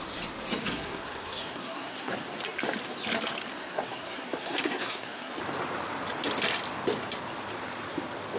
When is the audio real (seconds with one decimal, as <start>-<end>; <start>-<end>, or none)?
0.0-0.6; 2.1-3.5; 5.3-8.4